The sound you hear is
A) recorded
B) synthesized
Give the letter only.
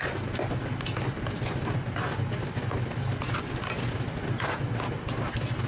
A